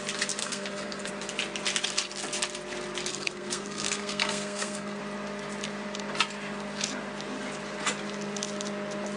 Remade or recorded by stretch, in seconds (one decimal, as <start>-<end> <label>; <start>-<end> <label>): 0.0-0.4 recorded; 0.4-1.1 remade; 1.1-3.1 recorded; 3.1-5.0 remade; 5.0-9.2 recorded